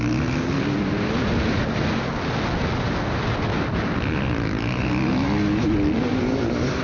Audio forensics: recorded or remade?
recorded